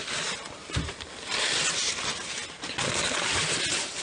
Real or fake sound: real